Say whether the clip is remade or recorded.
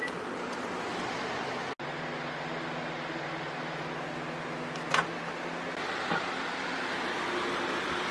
recorded